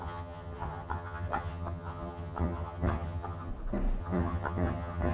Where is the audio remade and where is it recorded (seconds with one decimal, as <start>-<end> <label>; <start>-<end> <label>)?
0.0-3.5 remade; 3.5-4.0 recorded; 4.0-5.1 remade